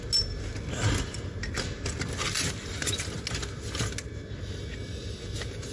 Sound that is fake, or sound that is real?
real